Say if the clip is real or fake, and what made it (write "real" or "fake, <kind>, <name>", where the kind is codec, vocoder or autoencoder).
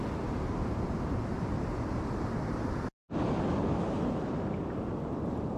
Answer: real